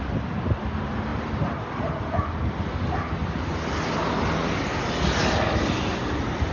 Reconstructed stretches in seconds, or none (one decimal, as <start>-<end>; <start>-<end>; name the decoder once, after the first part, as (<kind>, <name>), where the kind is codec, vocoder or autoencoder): 1.1-2.4 (vocoder, BigVGAN v2)